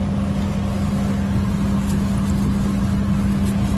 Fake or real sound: real